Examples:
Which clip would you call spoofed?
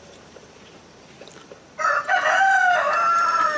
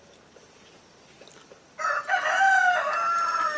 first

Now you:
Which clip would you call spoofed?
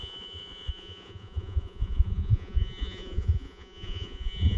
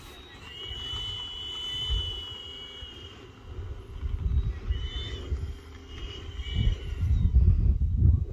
first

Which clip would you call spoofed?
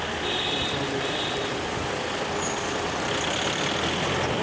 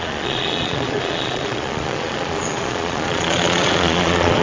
second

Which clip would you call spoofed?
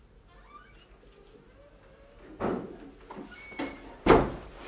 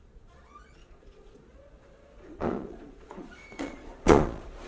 second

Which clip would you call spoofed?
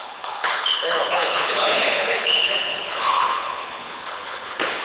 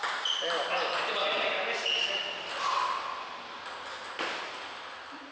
first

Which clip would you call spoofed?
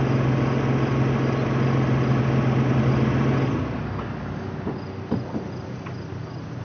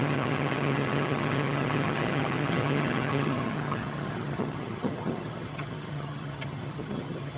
second